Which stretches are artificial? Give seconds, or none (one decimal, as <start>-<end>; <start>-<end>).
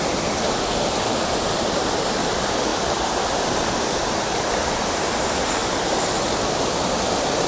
2.7-4.0; 5.6-6.9